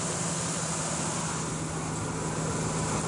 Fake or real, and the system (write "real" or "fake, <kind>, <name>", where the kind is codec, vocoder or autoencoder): real